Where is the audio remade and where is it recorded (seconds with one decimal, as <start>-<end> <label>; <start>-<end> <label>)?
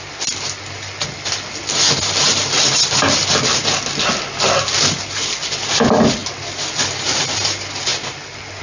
0.0-8.6 recorded